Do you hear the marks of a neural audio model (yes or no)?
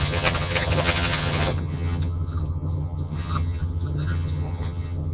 yes